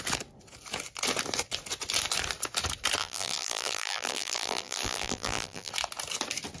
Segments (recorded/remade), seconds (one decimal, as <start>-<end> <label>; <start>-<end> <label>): 0.0-3.0 recorded; 3.0-5.7 remade; 5.7-6.6 recorded